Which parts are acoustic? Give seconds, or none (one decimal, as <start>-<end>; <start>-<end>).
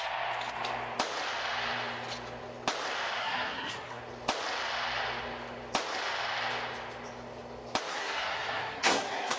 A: 0.0-3.2; 4.0-7.9